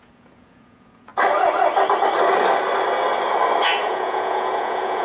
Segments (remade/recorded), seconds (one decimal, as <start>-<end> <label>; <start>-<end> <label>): 0.0-1.1 remade; 1.1-3.8 recorded; 3.8-5.0 remade